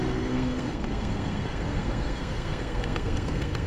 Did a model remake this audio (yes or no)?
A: yes